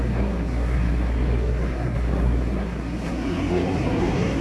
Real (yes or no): no